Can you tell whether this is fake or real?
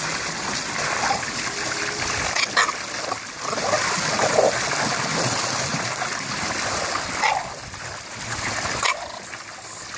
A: real